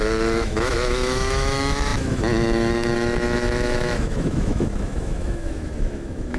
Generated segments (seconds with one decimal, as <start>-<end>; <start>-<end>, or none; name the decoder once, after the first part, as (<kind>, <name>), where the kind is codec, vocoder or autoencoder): 0.0-6.4 (autoencoder, DAC-VAE)